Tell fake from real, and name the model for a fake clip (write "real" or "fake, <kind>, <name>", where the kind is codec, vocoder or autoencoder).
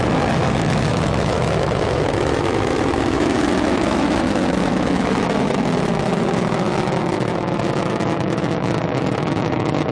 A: fake, autoencoder, DAC-VAE